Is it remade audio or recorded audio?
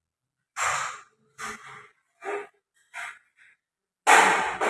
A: recorded